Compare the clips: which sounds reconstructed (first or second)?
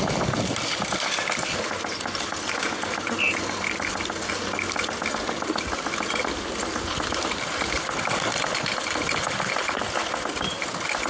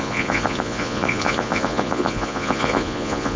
second